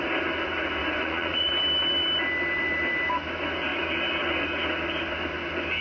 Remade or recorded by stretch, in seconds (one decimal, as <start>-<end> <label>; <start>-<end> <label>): 0.0-0.8 recorded; 0.8-1.5 remade; 1.5-5.8 recorded

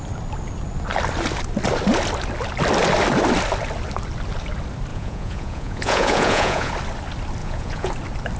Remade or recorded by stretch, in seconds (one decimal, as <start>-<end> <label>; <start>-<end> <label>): 0.0-4.9 recorded; 4.9-6.7 remade; 6.7-7.4 recorded; 7.4-7.9 remade; 7.9-8.4 recorded

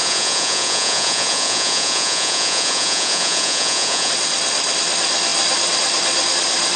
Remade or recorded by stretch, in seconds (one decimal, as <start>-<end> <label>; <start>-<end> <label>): 0.0-4.1 remade; 4.1-6.8 recorded

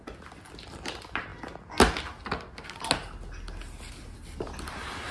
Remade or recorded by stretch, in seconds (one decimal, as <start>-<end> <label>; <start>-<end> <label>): 0.0-5.1 recorded